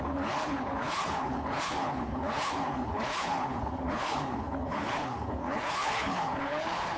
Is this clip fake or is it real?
fake